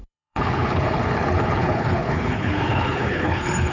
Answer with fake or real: fake